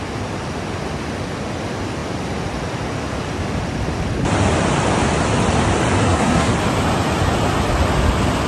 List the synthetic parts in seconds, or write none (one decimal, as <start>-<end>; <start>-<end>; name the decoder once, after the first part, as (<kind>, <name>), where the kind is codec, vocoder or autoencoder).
6.0-6.5 (codec, SNAC)